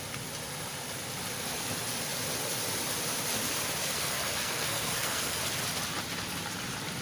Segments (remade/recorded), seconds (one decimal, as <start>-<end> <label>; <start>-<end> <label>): 0.0-3.8 recorded; 3.8-5.4 remade; 5.4-7.0 recorded